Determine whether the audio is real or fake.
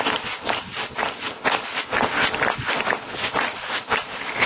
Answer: real